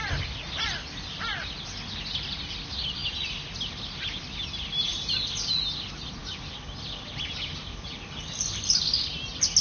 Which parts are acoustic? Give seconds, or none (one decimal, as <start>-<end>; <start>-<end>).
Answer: 0.0-9.6